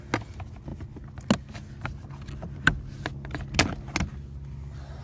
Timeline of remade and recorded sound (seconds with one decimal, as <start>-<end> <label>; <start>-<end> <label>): 0.0-5.0 recorded